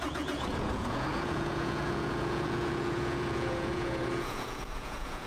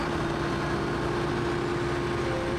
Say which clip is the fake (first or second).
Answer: first